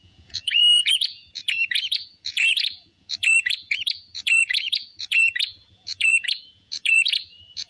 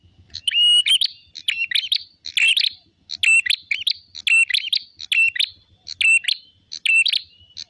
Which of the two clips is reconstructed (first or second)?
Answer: first